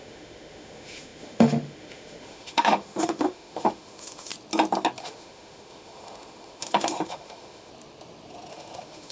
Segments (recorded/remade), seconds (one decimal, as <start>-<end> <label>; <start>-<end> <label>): 0.0-4.3 remade; 4.3-5.0 recorded; 5.0-7.7 remade; 7.7-8.5 recorded; 8.5-9.1 remade